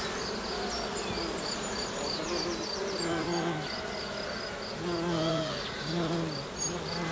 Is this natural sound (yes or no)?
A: yes